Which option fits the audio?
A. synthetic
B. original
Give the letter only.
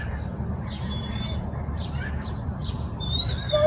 B